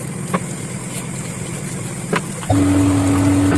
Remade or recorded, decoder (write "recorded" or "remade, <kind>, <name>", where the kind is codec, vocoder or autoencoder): recorded